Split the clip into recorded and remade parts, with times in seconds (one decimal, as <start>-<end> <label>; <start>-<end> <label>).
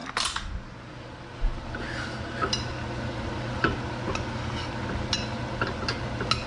0.0-6.5 recorded